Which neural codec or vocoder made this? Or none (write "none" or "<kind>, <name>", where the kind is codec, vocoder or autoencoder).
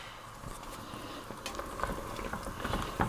none